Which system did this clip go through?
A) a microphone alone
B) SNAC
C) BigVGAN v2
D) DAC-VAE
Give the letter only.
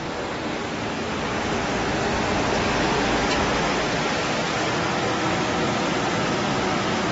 A